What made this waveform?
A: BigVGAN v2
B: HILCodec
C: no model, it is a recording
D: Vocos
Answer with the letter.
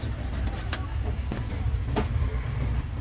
C